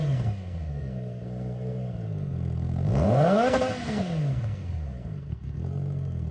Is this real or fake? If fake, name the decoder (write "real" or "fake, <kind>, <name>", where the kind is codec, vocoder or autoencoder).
fake, codec, SNAC